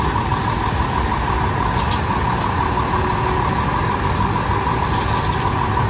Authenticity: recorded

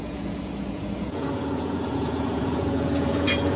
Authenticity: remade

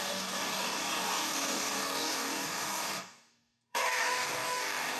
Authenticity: remade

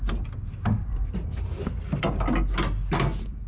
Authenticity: recorded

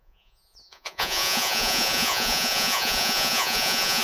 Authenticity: remade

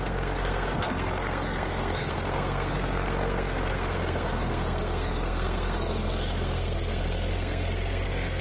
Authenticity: remade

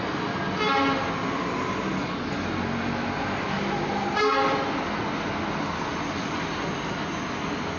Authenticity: recorded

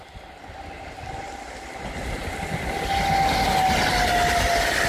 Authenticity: recorded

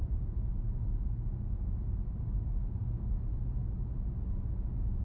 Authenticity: recorded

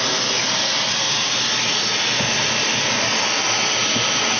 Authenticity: recorded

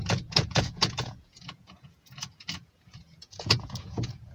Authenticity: remade